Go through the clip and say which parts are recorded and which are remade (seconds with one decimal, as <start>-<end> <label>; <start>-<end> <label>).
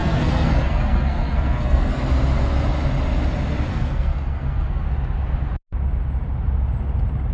0.0-2.0 remade; 2.0-3.7 recorded; 3.7-4.8 remade; 4.8-7.3 recorded